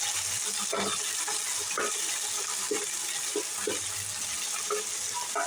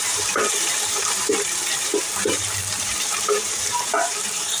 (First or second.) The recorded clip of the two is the first